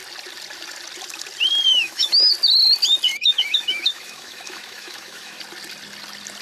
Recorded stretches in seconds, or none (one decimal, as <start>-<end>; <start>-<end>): 0.0-1.7; 2.3-3.1; 5.4-6.4